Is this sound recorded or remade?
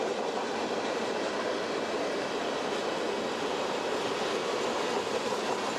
recorded